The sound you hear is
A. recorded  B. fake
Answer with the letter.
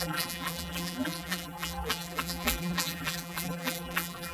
B